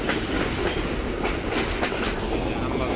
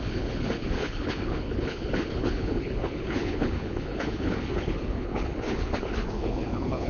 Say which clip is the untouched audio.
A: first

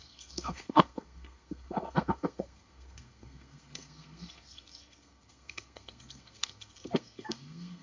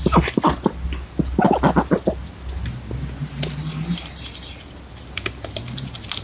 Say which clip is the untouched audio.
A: second